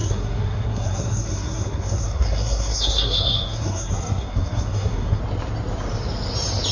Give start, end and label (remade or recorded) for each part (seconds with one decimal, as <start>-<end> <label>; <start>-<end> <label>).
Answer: 0.0-5.2 remade; 5.2-6.7 recorded